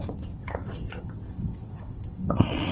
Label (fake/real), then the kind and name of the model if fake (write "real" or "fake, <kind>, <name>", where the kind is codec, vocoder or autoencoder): fake, vocoder, WaveNeXt